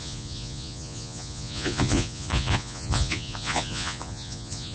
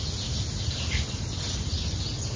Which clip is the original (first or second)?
second